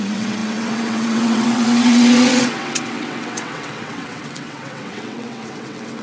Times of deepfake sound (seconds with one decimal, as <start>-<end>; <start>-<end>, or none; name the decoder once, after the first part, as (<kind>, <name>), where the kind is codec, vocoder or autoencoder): 0.0-6.0 (vocoder, WaveNeXt)